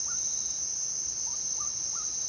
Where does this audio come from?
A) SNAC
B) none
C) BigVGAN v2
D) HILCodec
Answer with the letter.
C